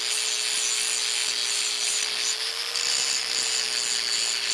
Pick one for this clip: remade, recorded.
recorded